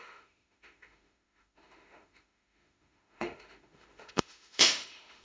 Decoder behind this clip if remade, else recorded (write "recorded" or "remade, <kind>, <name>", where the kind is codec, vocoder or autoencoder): remade, autoencoder, DAC-VAE